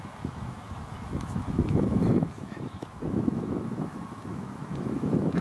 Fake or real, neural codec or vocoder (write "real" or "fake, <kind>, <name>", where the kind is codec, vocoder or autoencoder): fake, autoencoder, DAC-VAE